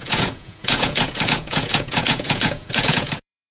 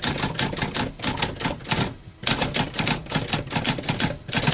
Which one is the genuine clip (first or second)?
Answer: second